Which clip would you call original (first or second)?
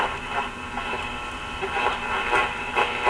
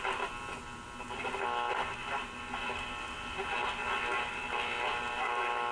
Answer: second